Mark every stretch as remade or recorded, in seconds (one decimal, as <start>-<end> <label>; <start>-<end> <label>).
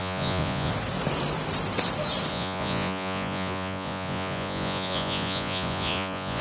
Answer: 0.0-0.7 remade; 0.7-2.3 recorded; 2.3-6.4 remade